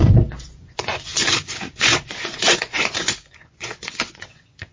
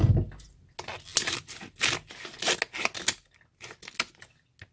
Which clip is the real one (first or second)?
second